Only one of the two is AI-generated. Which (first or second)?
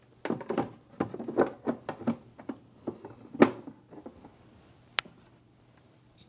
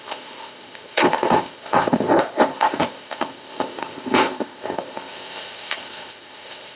second